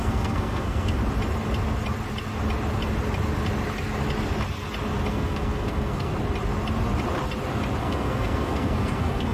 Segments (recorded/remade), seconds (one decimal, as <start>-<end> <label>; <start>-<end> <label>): 0.0-1.0 remade; 1.0-5.1 recorded; 5.1-6.1 remade; 6.1-7.8 recorded; 7.8-9.3 remade